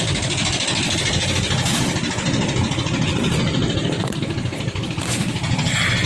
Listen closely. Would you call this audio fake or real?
real